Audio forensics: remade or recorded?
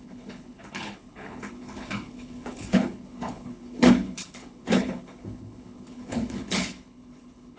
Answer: remade